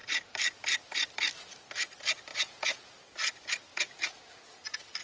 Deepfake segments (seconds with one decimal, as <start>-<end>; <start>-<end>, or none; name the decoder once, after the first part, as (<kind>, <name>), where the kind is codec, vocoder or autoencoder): 2.3-2.9 (vocoder, Vocos); 3.7-4.2